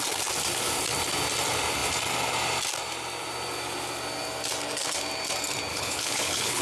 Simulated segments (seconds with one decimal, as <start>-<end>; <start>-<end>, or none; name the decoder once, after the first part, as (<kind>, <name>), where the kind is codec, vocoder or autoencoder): 5.7-6.6 (codec, HILCodec)